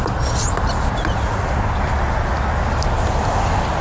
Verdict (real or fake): real